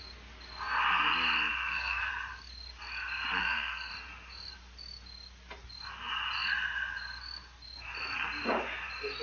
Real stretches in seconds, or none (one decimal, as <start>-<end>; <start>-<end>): 0.0-1.5; 2.1-3.4; 3.9-9.2